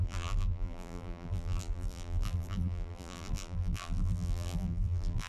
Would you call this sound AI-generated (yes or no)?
yes